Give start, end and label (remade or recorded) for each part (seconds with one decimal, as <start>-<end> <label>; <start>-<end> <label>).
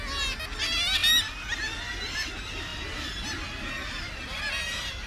0.0-5.1 recorded